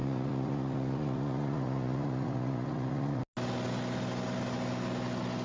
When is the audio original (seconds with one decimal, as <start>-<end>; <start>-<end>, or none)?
3.2-5.4